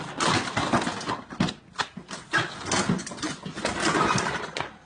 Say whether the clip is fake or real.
real